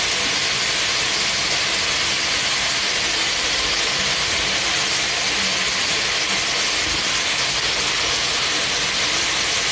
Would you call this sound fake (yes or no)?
no